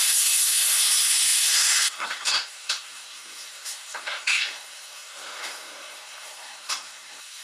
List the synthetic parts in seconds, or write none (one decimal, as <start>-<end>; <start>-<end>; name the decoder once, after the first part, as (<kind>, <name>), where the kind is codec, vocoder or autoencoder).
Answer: 0.0-7.4 (codec, SNAC)